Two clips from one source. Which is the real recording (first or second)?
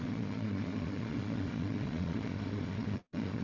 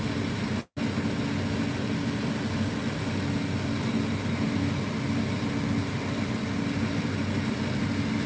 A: second